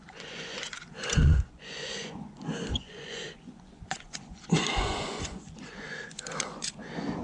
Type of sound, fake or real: fake